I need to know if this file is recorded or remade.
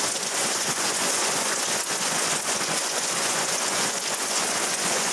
remade